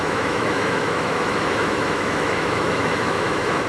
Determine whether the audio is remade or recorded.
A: remade